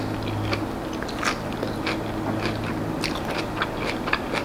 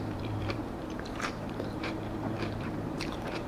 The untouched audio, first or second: first